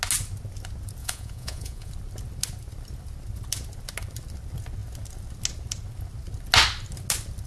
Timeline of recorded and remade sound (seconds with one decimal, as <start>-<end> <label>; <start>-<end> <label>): 0.0-1.0 recorded; 1.0-1.9 remade; 1.9-7.5 recorded